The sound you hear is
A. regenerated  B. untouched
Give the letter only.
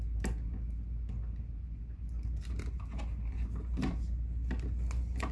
B